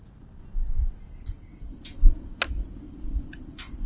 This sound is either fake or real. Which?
real